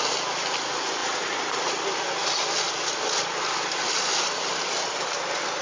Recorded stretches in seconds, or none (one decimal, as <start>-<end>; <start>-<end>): 0.0-5.6